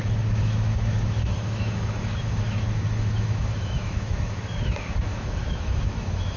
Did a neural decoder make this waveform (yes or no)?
yes